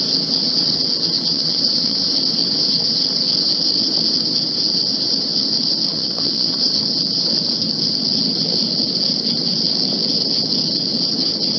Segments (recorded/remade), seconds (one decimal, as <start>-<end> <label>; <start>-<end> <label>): 0.0-1.3 recorded; 1.3-2.1 remade; 2.1-5.9 recorded; 5.9-6.7 remade; 6.7-11.6 recorded